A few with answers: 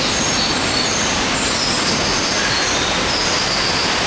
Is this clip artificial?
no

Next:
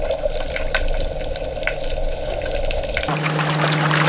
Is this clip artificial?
no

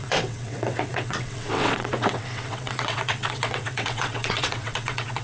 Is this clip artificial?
yes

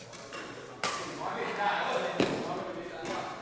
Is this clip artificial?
no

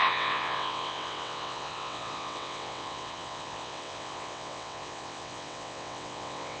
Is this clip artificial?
yes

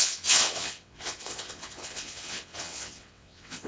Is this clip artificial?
yes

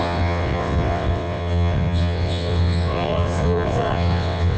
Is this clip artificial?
yes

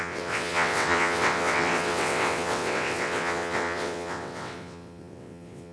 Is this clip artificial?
yes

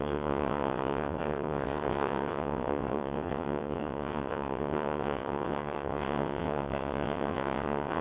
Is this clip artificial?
yes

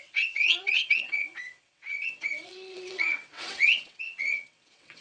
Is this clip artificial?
yes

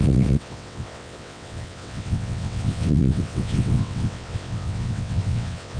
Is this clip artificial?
yes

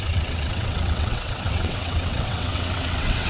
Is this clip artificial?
yes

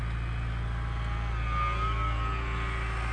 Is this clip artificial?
no